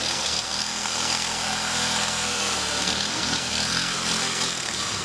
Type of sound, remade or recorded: remade